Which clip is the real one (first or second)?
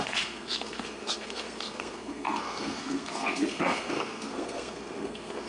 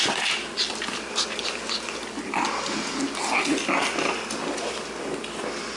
second